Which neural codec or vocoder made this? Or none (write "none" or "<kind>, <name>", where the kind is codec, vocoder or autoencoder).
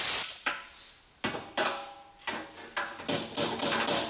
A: none